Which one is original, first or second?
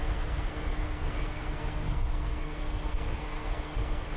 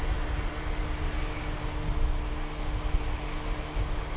second